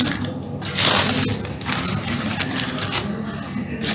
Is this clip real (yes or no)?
yes